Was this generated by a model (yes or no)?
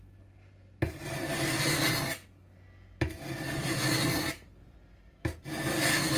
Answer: no